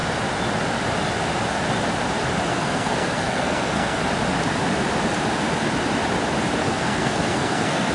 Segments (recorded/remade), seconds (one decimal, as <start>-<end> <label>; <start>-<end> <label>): 0.0-2.5 recorded; 2.5-4.0 remade; 4.0-6.6 recorded; 6.6-7.9 remade